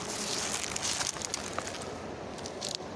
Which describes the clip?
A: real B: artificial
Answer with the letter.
A